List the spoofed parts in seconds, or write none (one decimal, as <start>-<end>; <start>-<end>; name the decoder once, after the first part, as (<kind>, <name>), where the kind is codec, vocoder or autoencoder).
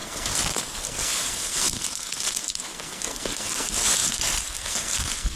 0.0-5.4 (codec, SNAC)